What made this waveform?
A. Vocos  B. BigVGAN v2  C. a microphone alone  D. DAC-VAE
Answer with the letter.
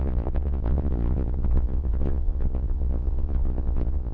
A